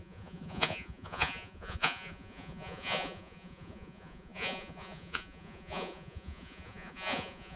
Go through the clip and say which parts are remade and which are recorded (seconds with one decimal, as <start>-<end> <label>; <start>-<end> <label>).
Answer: 0.0-7.6 remade